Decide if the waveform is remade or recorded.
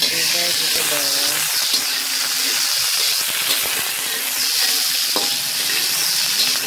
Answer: recorded